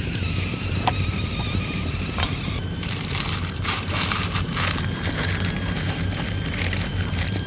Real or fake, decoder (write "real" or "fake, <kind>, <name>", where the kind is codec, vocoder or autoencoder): fake, vocoder, BigVGAN v2